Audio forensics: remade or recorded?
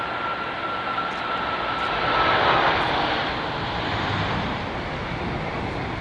recorded